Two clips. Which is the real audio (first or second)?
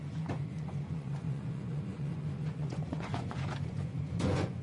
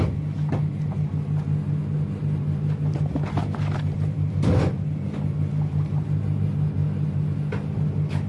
second